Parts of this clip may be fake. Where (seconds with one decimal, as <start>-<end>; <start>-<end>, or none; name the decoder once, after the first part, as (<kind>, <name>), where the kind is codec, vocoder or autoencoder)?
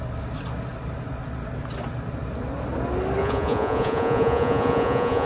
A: 3.2-5.3 (vocoder, Vocos)